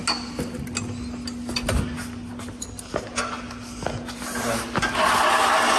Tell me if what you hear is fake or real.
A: real